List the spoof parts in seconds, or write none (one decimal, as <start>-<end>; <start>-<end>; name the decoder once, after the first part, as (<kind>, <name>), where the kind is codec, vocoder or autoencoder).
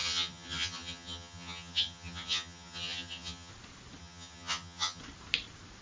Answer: 0.0-3.5 (vocoder, HiFi-GAN); 4.0-5.0